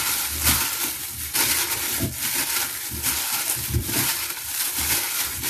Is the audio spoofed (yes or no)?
yes